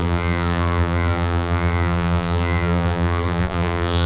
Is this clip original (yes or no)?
no